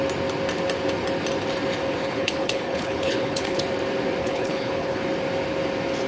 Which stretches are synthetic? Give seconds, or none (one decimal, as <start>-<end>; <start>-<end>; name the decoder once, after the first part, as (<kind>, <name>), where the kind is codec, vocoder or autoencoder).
2.0-3.6 (codec, HILCodec); 4.2-5.0